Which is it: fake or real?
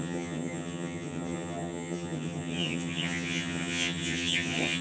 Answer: fake